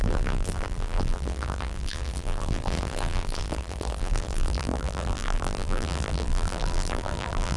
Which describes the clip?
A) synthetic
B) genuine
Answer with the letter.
A